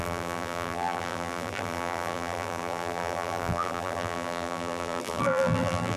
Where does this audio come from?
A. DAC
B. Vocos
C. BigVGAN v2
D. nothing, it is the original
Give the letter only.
C